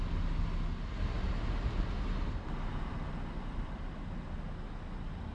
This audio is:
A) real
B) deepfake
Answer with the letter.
A